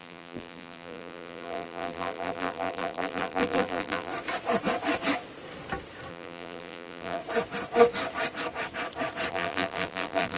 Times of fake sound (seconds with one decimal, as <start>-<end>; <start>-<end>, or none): 0.0-4.1; 6.1-7.2; 9.3-10.4